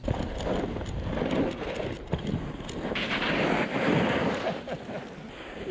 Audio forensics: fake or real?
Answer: real